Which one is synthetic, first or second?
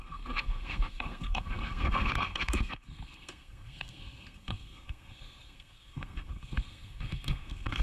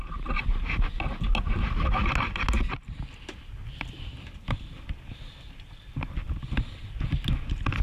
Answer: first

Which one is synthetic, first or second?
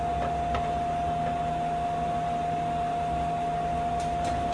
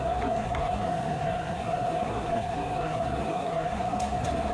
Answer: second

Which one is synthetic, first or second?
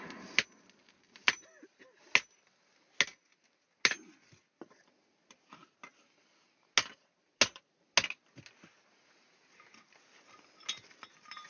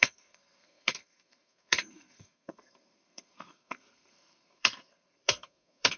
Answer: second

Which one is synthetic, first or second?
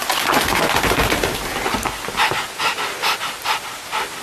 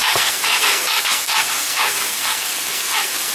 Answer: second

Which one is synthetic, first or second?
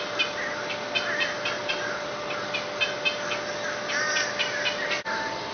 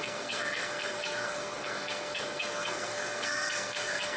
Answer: second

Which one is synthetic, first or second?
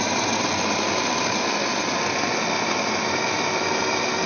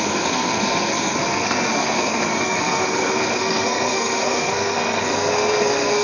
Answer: second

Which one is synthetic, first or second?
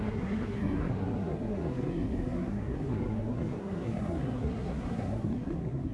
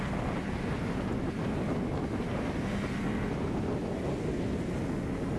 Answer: first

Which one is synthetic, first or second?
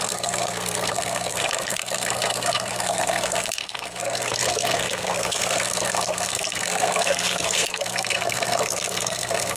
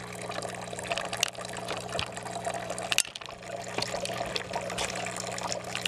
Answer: first